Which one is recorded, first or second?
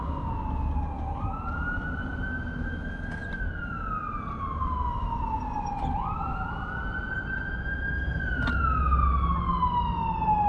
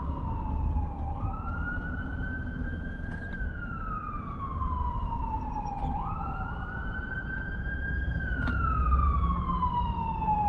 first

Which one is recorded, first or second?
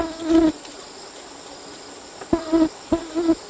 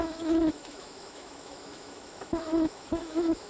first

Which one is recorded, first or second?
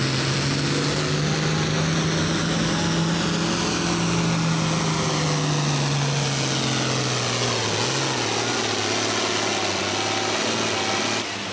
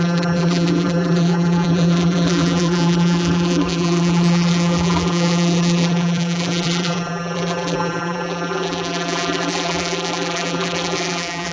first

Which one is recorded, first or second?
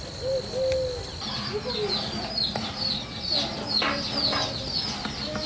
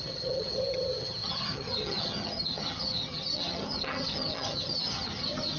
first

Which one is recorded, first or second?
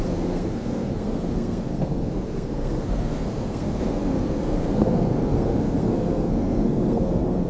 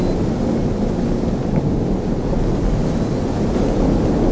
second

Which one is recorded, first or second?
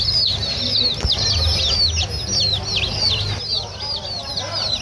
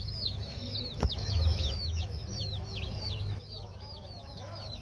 first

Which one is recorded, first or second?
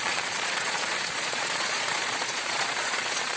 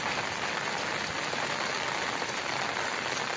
second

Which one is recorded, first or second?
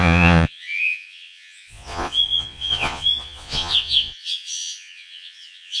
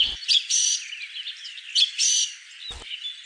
second